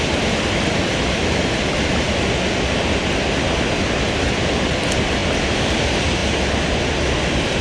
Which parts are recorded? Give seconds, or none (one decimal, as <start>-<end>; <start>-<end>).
0.0-7.6